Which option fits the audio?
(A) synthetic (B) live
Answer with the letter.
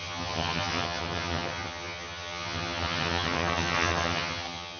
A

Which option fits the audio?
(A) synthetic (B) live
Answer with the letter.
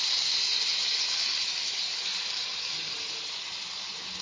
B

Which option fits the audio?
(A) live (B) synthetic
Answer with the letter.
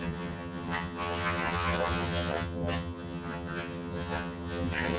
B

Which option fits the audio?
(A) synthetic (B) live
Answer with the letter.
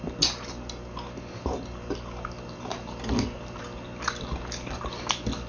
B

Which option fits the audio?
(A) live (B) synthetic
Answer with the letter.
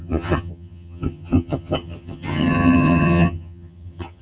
B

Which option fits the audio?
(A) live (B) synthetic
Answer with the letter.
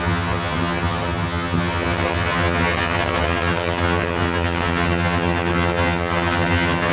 B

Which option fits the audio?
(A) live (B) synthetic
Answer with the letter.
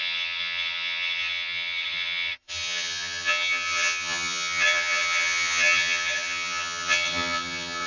B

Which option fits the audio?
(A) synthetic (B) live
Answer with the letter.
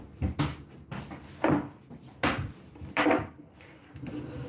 B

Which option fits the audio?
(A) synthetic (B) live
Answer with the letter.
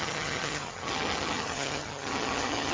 A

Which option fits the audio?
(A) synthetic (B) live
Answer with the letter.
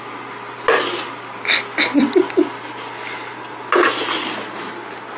B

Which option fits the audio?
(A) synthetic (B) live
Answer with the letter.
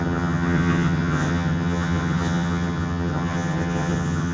A